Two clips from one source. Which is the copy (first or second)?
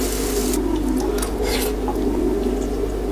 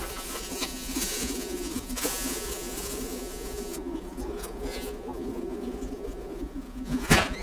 second